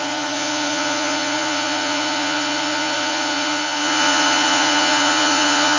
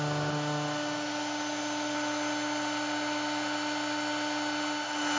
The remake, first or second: first